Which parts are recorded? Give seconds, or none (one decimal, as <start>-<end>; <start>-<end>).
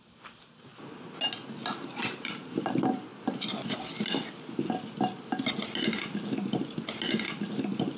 0.7-1.8; 3.1-8.0